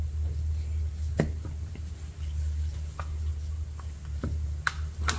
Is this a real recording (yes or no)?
yes